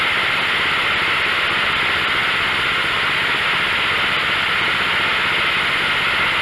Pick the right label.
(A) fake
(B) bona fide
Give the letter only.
B